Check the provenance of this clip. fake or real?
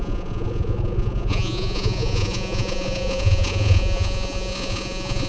fake